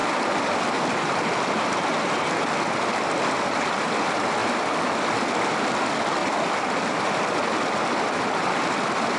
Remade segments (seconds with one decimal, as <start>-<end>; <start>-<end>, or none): 0.0-4.4; 4.9-6.2; 7.8-9.2